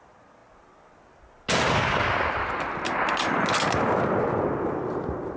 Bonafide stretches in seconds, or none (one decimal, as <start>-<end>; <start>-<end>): 0.0-5.4